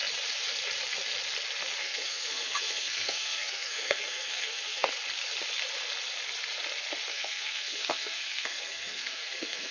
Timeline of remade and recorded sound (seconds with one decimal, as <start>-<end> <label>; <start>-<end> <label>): 0.0-1.8 recorded; 1.8-4.9 remade; 4.9-7.1 recorded; 7.1-9.7 remade